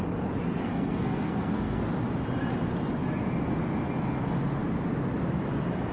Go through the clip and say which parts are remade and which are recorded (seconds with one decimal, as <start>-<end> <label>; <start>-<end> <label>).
0.0-0.6 recorded; 0.6-1.8 remade; 1.8-5.9 recorded